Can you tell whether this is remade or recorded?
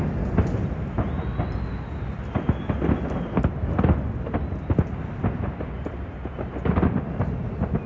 recorded